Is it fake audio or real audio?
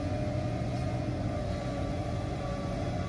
fake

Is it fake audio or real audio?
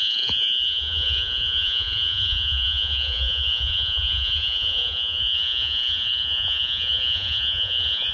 fake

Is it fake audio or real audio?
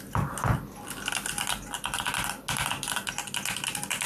real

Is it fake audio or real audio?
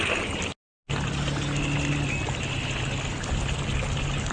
real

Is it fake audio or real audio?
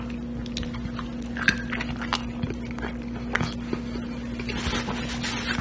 real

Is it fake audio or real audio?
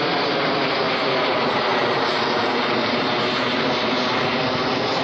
fake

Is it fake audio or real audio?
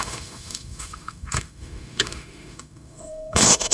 fake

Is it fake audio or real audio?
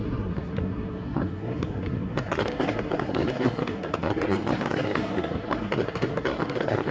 fake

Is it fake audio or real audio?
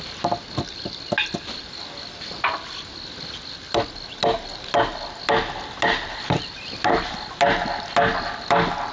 real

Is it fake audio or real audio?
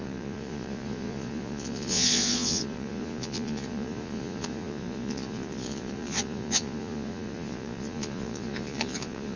fake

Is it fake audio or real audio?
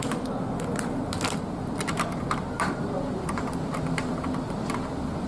fake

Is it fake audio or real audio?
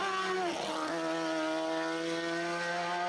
real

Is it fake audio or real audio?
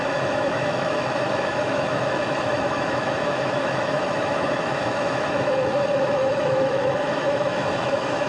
fake